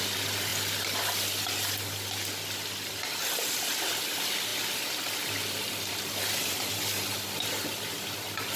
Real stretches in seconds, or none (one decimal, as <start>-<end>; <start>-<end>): 0.0-8.6

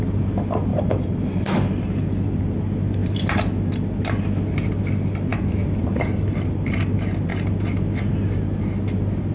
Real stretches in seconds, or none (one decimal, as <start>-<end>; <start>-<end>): 0.0-0.7; 1.8-9.3

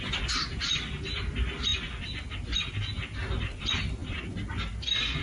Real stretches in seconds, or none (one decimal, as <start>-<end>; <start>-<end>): 0.0-5.2

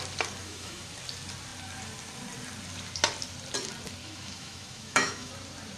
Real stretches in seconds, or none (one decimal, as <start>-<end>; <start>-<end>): 0.0-0.4; 0.9-4.0; 5.3-5.8

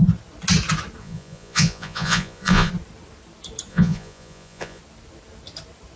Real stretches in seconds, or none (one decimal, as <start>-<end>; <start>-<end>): 0.0-1.0; 2.7-3.7; 4.8-6.0